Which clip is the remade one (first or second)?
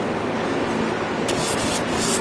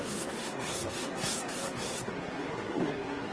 second